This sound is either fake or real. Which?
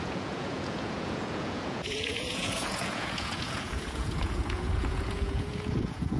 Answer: fake